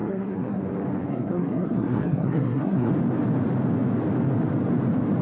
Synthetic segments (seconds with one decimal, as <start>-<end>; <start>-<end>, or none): 0.0-0.6; 1.1-2.9

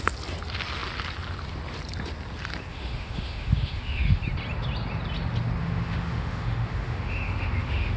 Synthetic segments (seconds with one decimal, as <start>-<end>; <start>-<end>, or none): 2.7-4.2; 5.6-8.0

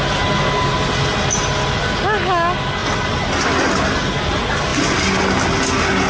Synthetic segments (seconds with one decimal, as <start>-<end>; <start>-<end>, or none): none

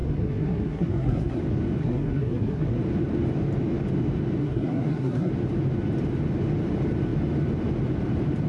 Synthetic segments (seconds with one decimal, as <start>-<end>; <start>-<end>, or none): 0.0-1.4; 1.8-2.8; 4.4-5.3

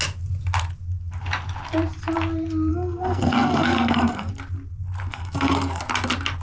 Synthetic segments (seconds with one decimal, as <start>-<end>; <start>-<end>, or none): 2.7-4.3; 5.1-5.8

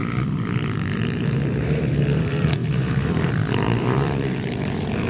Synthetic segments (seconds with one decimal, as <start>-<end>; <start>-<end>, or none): 1.0-5.1